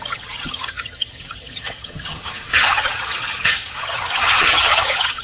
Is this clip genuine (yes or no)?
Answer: no